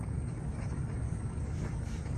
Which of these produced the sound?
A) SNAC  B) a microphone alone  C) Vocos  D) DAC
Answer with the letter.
D